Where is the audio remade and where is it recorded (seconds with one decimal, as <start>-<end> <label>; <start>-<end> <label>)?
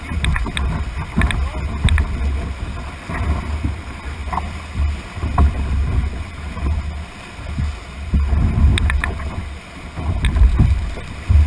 0.0-11.5 recorded